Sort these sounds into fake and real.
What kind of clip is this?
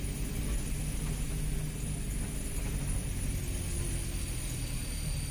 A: real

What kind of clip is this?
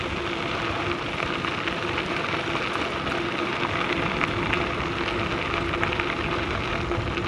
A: real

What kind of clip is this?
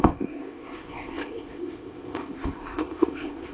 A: fake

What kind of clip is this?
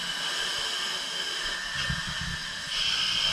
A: real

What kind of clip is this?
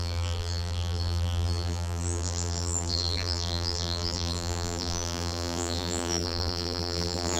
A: fake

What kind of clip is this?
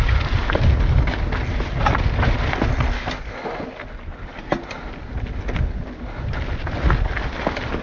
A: real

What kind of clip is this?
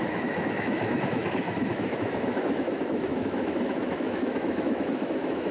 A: fake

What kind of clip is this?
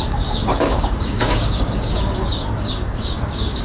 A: fake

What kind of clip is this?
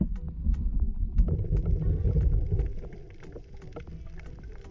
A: real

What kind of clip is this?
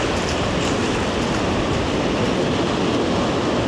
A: real